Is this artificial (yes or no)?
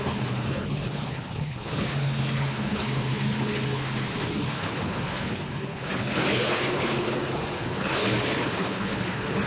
yes